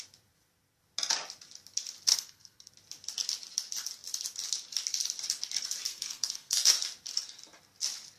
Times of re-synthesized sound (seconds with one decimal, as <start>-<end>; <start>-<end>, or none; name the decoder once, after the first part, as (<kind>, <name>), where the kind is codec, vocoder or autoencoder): 2.1-2.7 (codec, SNAC); 5.9-6.7